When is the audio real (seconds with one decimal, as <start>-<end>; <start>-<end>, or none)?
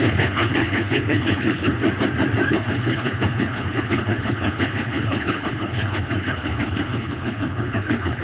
1.8-2.5